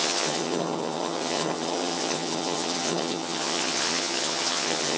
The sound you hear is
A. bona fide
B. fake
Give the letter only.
B